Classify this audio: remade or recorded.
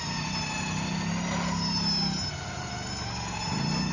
recorded